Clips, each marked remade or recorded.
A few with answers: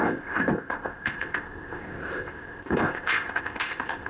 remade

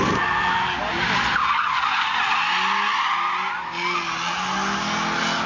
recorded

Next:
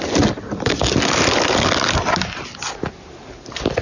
recorded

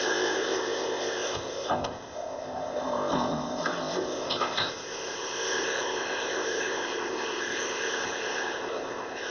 remade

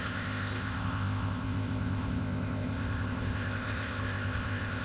remade